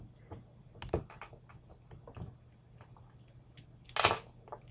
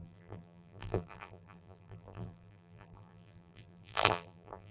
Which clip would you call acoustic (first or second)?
first